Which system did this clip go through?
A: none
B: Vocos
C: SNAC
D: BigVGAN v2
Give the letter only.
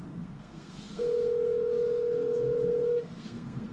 C